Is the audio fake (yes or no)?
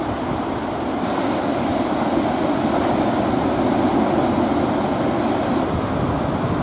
no